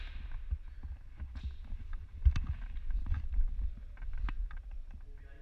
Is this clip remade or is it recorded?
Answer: recorded